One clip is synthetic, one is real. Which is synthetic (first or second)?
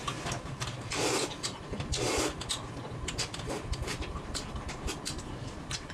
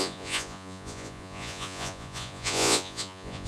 second